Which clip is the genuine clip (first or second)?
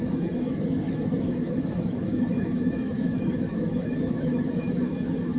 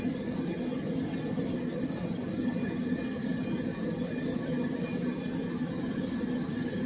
second